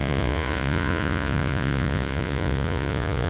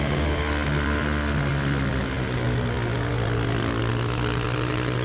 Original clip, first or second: second